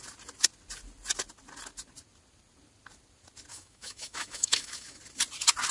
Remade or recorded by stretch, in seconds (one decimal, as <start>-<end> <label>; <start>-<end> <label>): 0.0-3.5 recorded; 3.5-5.0 remade; 5.0-5.7 recorded